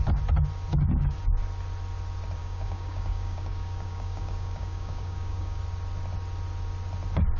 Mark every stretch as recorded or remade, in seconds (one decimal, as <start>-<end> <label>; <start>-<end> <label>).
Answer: 0.0-0.7 recorded; 0.7-1.2 remade; 1.2-2.4 recorded; 2.4-5.6 remade; 5.6-7.4 recorded